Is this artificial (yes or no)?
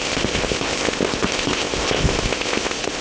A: yes